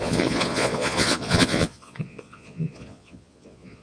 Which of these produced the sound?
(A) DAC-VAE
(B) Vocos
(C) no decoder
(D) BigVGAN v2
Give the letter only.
B